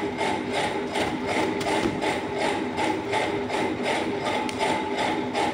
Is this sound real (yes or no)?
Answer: yes